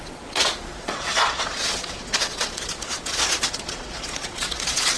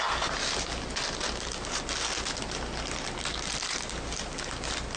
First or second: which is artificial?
first